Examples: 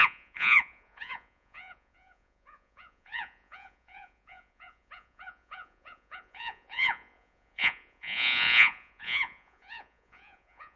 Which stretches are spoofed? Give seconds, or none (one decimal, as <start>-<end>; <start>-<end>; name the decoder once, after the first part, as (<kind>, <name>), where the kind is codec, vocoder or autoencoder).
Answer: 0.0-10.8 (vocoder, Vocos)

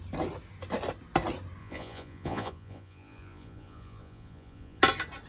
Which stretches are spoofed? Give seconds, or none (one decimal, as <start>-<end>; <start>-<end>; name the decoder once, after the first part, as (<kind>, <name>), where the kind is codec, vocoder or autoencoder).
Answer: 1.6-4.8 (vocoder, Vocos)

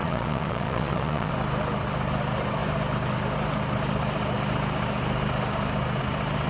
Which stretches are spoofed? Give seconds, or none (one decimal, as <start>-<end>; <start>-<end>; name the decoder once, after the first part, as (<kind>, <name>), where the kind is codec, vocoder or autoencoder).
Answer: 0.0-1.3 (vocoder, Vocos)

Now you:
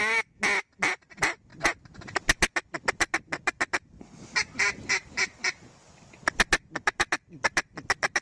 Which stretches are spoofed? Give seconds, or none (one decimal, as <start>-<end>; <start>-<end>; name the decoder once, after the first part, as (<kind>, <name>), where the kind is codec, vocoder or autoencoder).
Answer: none